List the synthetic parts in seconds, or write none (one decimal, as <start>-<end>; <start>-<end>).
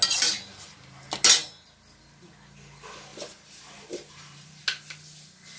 3.1-4.6